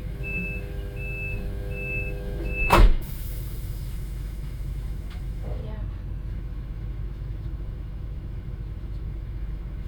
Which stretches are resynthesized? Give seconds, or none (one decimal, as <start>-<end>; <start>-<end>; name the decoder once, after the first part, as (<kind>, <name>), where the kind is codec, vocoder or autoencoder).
0.0-5.6 (autoencoder, DAC-VAE); 6.3-9.9